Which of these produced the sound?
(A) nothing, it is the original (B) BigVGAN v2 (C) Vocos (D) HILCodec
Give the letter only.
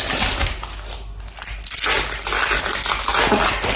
A